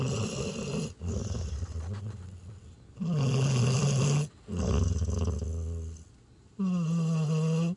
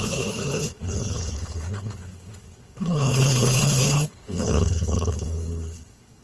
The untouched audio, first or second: first